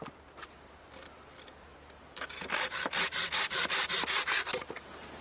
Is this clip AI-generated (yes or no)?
no